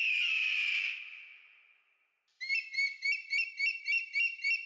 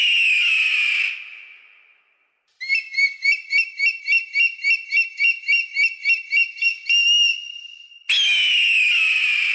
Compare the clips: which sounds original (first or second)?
second